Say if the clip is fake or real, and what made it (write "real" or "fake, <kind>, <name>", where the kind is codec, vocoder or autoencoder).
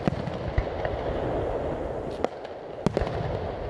real